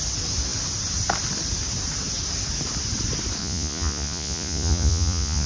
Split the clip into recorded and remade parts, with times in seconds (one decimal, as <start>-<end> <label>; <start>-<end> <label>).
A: 0.0-3.4 recorded; 3.4-5.5 remade